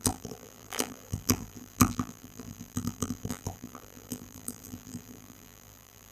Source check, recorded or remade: remade